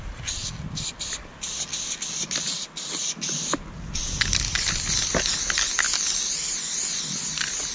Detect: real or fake real